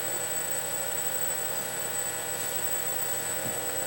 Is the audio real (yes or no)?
no